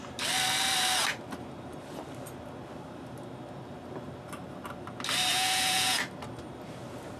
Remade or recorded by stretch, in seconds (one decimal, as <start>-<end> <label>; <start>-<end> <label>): 0.0-5.3 recorded; 5.3-6.0 remade; 6.0-7.2 recorded